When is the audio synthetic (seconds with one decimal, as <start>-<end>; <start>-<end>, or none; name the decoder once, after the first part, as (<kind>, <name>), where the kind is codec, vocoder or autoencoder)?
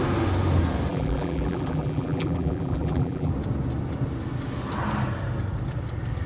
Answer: 0.9-3.3 (vocoder, BigVGAN v2)